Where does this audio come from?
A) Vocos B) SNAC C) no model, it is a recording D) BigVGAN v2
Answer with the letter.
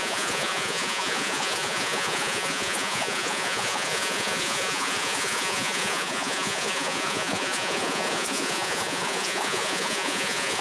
A